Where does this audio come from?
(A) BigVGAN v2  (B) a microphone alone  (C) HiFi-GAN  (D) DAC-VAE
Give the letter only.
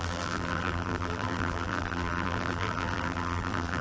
A